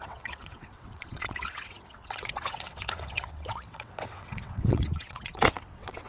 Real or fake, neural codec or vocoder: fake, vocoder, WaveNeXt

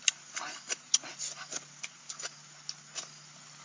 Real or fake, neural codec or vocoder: real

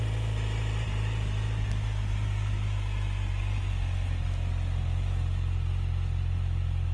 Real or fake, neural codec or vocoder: real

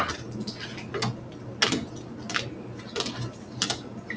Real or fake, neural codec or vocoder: real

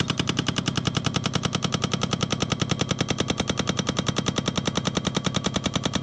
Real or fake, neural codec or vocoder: real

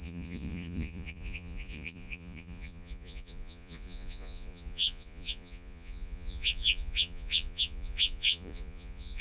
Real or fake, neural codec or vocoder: fake, vocoder, Vocos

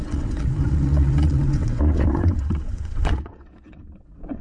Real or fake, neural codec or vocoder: fake, vocoder, WaveNeXt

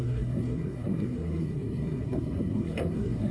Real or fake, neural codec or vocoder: fake, codec, SNAC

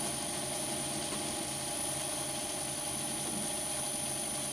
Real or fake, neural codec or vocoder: real